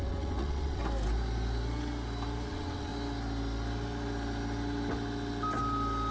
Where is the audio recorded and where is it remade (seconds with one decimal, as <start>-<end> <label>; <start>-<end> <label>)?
0.0-0.8 remade; 0.8-2.5 recorded; 2.5-2.9 remade; 2.9-6.1 recorded